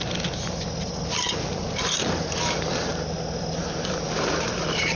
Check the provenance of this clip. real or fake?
real